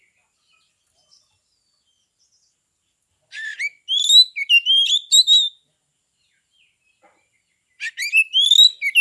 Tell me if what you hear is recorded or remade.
recorded